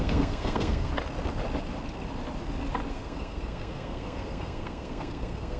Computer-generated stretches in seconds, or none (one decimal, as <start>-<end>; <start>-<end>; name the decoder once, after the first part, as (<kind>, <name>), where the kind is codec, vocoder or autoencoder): 0.0-0.9 (codec, SNAC); 2.9-5.6